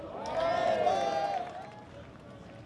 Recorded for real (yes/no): yes